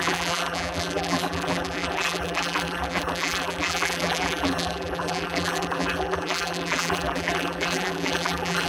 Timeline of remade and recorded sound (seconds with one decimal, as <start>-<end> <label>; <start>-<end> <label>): 0.0-8.7 remade